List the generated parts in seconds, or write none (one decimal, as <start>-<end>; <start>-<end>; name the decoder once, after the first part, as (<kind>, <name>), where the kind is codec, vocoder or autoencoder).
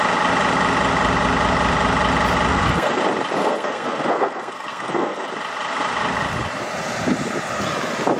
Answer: 2.5-3.0 (codec, SNAC); 3.4-5.3